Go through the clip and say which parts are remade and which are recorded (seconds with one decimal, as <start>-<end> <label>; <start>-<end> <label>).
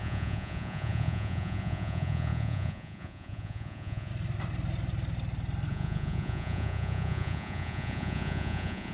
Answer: 0.0-4.1 remade; 4.1-5.7 recorded; 5.7-8.9 remade